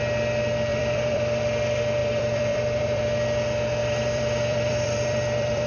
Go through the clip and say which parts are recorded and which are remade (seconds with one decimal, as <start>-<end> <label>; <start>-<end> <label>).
0.0-0.7 recorded; 0.7-1.4 remade; 1.4-2.0 recorded; 2.0-3.0 remade; 3.0-3.8 recorded; 3.8-5.7 remade

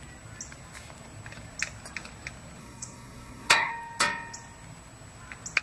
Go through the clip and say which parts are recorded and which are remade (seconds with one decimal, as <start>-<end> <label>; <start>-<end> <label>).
0.0-2.6 recorded; 2.6-3.7 remade; 3.7-5.6 recorded

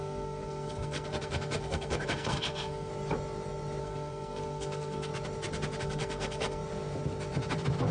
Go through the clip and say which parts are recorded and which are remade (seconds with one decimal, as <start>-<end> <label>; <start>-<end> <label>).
0.0-2.9 remade; 2.9-3.8 recorded; 3.8-5.1 remade; 5.1-5.8 recorded; 5.8-6.6 remade; 6.6-7.9 recorded

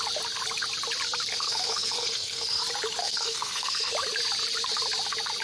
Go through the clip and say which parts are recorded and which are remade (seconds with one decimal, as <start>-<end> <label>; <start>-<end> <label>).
0.0-1.3 recorded; 1.3-2.6 remade; 2.6-3.0 recorded; 3.0-3.9 remade; 3.9-5.4 recorded

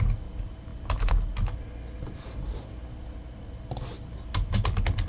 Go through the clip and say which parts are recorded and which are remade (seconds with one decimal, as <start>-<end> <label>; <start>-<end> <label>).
0.0-5.1 recorded

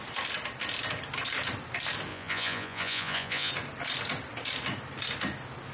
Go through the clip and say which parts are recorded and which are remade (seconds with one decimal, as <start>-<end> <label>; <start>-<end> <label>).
0.0-2.1 recorded; 2.1-3.5 remade; 3.5-5.7 recorded